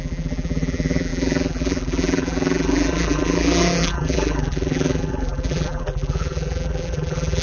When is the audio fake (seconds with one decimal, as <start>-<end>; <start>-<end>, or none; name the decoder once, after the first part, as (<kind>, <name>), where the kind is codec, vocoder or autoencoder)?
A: 0.0-7.4 (vocoder, BigVGAN v2)